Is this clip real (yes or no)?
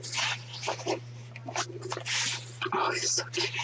yes